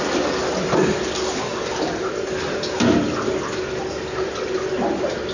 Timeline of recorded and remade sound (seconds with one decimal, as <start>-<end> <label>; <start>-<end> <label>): 0.0-5.3 recorded

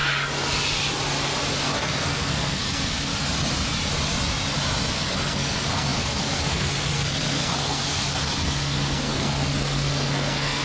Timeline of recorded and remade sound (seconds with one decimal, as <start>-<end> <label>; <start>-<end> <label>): 0.0-1.6 recorded; 1.6-3.1 remade; 3.1-4.9 recorded; 4.9-10.6 remade

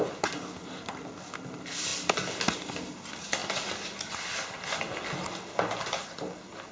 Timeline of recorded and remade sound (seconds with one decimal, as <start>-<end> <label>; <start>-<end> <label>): 0.0-6.7 recorded

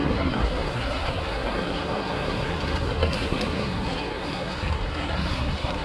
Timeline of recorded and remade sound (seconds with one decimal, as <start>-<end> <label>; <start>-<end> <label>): 0.0-5.8 remade

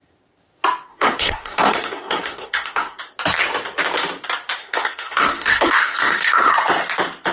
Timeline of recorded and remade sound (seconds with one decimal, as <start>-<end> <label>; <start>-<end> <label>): 0.0-0.9 recorded; 0.9-3.0 remade; 3.0-4.6 recorded; 4.6-6.5 remade; 6.5-7.3 recorded

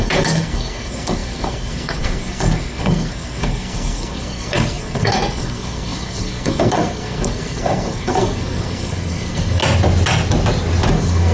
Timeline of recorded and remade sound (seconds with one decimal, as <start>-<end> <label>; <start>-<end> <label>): 0.0-9.6 remade; 9.6-10.9 recorded; 10.9-11.3 remade